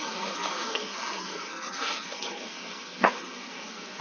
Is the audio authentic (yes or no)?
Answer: no